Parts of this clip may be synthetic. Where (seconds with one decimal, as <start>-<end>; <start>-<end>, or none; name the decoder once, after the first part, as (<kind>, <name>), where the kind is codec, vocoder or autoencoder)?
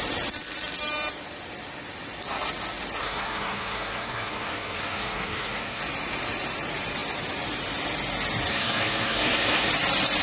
3.0-5.8 (codec, SNAC); 8.5-9.7